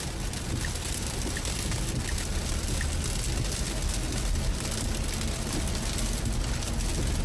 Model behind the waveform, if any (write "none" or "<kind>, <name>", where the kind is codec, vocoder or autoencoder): none